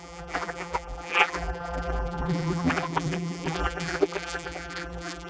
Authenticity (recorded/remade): remade